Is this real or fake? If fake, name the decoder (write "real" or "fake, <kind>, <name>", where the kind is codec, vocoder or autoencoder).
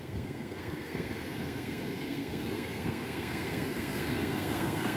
fake, codec, SNAC